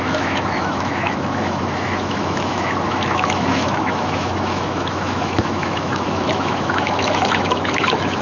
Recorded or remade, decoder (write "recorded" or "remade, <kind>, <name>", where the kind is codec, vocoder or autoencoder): remade, autoencoder, DAC-VAE